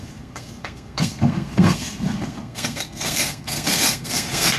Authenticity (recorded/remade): remade